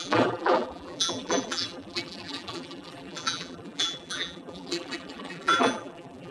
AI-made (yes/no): yes